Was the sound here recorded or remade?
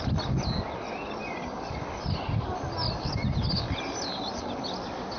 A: recorded